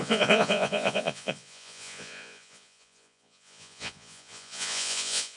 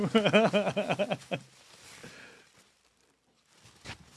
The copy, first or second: first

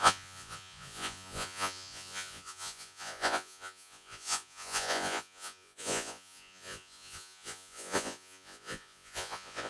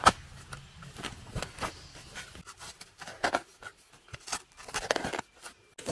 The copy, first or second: first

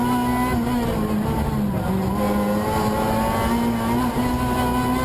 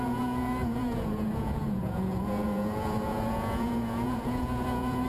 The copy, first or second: second